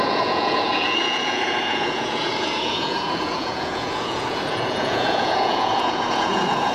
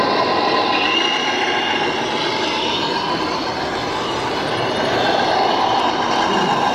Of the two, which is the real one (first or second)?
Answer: second